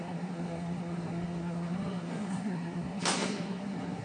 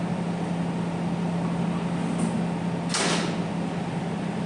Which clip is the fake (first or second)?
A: first